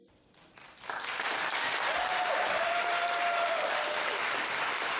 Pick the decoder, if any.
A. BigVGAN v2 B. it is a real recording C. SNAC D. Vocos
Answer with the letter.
A